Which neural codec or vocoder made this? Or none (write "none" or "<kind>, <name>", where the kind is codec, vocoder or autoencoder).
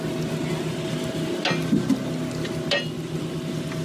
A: none